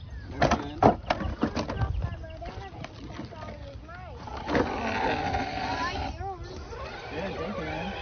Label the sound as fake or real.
real